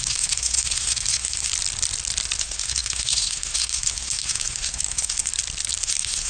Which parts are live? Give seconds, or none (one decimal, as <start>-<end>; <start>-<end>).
1.5-2.4; 5.3-5.8